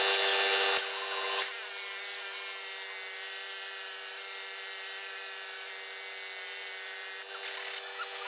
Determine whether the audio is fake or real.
real